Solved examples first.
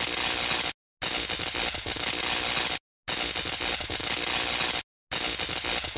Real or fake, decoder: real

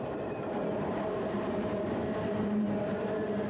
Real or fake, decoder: real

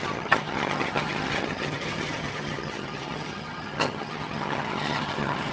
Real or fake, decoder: fake, vocoder, HiFi-GAN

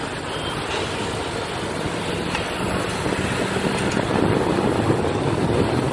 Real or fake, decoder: real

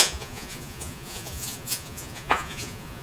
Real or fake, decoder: fake, vocoder, Vocos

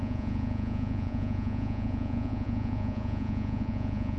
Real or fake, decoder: fake, vocoder, Vocos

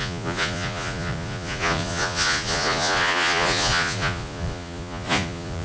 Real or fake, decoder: fake, vocoder, Vocos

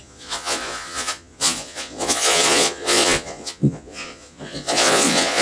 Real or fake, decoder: fake, vocoder, Vocos